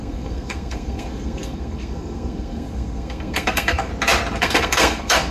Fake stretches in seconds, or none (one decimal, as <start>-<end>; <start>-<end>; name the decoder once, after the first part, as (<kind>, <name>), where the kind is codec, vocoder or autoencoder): 0.0-3.9 (codec, SNAC); 4.4-5.3